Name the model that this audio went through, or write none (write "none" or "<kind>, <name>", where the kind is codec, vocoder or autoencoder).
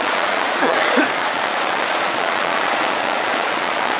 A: vocoder, Vocos